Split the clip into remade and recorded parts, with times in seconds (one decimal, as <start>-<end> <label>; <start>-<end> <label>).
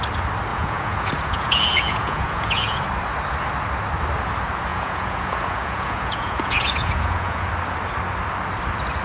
0.0-0.5 recorded; 0.5-2.8 remade; 2.8-4.7 recorded; 4.7-7.5 remade; 7.5-9.0 recorded